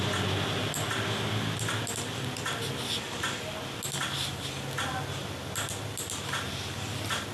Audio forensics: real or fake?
real